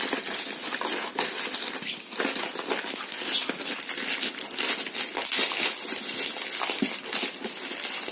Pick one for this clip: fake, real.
real